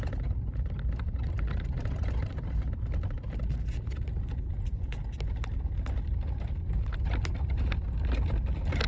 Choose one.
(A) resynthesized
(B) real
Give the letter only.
B